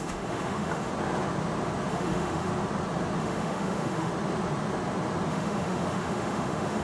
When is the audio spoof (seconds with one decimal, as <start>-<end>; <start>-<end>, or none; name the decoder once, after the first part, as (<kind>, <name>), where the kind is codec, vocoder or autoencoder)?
0.0-0.9 (autoencoder, DAC-VAE); 1.9-2.5; 3.2-4.1; 5.3-6.8